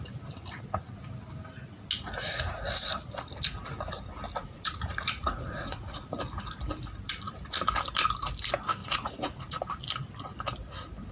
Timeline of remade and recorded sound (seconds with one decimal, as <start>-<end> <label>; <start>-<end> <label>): 0.0-4.4 recorded; 4.4-6.1 remade; 6.1-8.8 recorded; 8.8-9.6 remade; 9.6-11.1 recorded